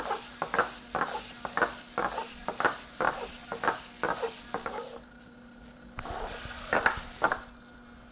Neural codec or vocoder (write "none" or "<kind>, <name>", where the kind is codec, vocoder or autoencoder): none